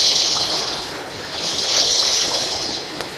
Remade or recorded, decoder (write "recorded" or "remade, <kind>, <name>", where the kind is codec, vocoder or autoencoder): remade, codec, HILCodec